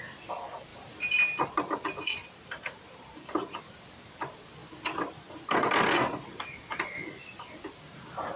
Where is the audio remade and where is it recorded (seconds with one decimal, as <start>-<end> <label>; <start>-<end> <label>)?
0.0-2.2 recorded; 2.2-3.6 remade; 3.6-8.4 recorded